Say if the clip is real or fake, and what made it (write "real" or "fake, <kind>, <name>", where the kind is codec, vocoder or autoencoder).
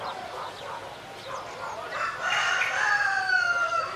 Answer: real